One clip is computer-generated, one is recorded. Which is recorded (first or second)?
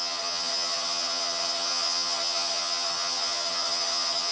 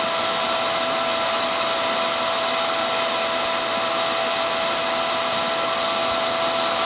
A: second